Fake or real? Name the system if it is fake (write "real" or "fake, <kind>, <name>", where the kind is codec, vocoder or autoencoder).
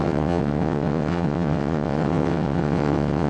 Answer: fake, vocoder, WaveNeXt